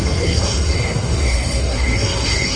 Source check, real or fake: fake